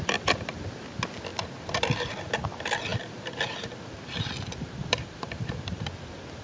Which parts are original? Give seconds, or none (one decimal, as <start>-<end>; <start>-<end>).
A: 0.0-1.3; 2.3-2.9; 3.5-4.8; 5.8-6.4